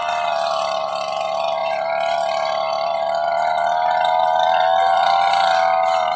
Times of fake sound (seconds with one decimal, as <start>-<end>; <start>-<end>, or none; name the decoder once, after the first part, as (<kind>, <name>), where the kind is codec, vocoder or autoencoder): 1.6-5.3 (vocoder, BigVGAN v2)